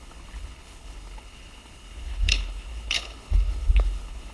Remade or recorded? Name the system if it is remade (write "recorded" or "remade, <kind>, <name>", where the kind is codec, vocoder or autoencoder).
remade, codec, HILCodec